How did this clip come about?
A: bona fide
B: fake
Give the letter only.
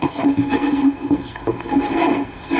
B